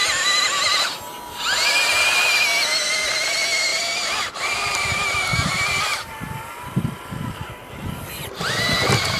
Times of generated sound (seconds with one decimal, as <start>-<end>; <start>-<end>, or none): 3.7-8.1